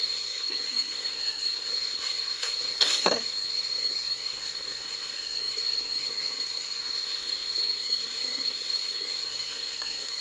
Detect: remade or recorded remade